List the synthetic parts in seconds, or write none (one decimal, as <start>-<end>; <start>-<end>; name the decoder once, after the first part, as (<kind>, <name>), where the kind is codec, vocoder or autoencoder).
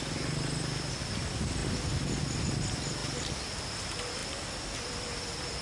none